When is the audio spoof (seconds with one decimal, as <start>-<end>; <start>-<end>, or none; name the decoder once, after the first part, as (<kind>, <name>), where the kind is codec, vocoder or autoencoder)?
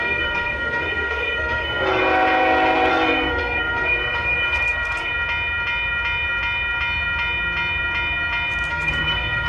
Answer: 0.0-2.0 (codec, SNAC); 2.9-5.1; 8.7-9.5